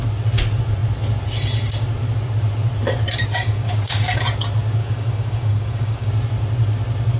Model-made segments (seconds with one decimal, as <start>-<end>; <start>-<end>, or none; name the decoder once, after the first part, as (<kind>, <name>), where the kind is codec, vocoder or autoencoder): 3.2-4.2 (codec, DAC); 4.8-6.1